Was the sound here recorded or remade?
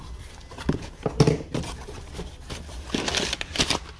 recorded